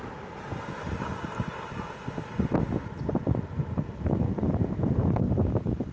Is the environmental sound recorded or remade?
recorded